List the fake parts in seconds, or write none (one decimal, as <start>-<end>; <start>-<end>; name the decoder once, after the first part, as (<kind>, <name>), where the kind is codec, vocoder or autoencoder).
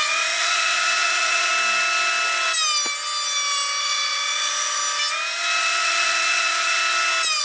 0.0-1.5 (vocoder, Vocos); 3.8-4.8; 5.6-6.8